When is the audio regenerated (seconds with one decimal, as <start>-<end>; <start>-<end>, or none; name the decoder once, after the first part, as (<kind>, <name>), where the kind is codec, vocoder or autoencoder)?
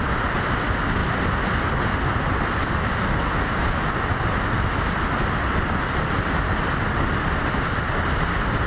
none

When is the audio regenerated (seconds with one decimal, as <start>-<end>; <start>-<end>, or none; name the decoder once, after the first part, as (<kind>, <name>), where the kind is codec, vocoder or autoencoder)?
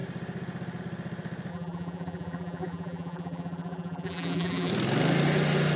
1.5-4.7 (vocoder, BigVGAN v2)